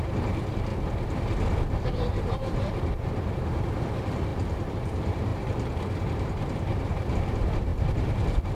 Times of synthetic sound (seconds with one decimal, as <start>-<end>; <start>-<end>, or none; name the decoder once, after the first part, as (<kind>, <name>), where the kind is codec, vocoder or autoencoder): 0.0-0.7 (vocoder, BigVGAN v2); 1.9-8.5